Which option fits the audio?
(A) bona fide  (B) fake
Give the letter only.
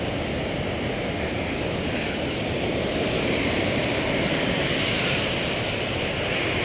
A